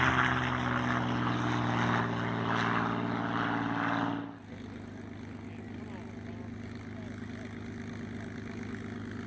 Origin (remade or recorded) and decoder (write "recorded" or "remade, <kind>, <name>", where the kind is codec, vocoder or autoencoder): recorded